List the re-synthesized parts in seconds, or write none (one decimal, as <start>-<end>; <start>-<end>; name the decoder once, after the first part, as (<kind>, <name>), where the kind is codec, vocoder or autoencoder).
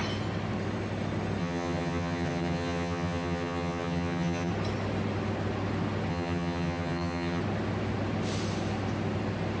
1.4-4.5 (vocoder, HiFi-GAN); 6.1-7.4